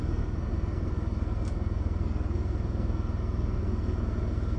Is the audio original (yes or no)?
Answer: no